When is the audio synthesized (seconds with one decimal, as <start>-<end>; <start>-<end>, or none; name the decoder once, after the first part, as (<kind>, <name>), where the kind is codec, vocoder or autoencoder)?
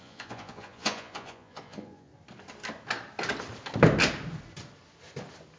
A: 0.0-2.1 (vocoder, Vocos)